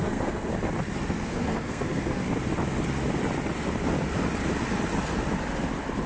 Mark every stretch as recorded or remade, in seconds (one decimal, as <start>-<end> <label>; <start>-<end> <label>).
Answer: 0.0-0.5 remade; 0.5-1.1 recorded; 1.1-2.2 remade; 2.2-6.1 recorded